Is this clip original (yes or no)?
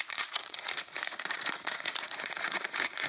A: no